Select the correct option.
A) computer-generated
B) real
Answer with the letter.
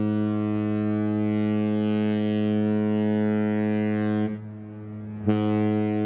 B